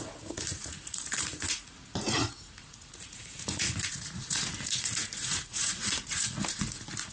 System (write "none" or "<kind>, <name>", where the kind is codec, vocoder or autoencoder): vocoder, Vocos